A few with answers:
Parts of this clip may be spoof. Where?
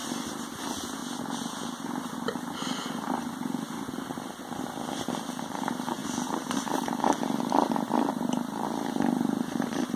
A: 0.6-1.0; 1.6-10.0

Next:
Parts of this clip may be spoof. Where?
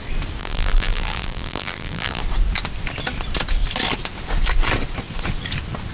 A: 0.4-2.2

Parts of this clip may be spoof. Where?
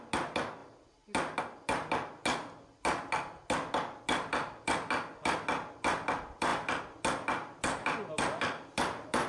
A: none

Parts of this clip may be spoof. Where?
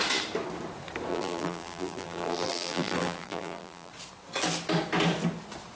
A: 1.1-3.9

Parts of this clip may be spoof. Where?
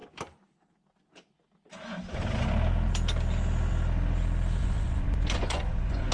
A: 4.6-6.1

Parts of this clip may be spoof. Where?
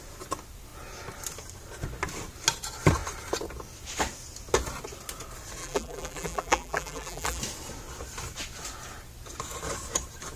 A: 5.6-7.4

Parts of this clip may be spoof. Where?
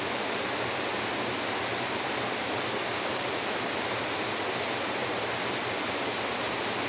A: none